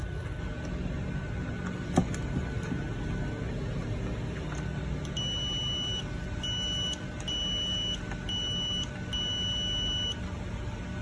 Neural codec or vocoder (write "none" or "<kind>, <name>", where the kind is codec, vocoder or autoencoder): none